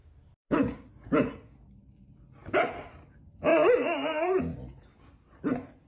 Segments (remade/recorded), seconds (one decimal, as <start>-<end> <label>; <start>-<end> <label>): 0.0-0.9 remade; 0.9-2.4 recorded; 2.4-2.9 remade; 2.9-3.5 recorded; 3.5-4.4 remade; 4.4-5.9 recorded